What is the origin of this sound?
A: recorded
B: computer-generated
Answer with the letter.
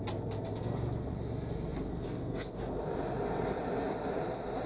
A